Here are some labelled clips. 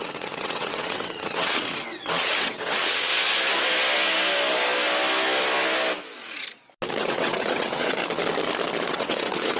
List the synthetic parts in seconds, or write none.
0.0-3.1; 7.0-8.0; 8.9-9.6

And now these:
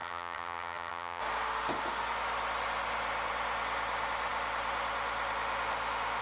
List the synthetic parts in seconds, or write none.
0.0-1.2

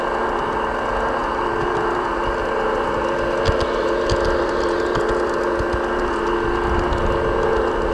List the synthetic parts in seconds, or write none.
none

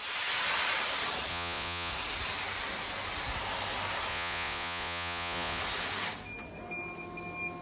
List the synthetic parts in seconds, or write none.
1.3-1.9; 4.1-5.6

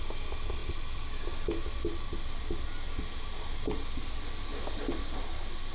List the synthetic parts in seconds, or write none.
4.5-5.2